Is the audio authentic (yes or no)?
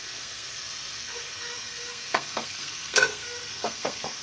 no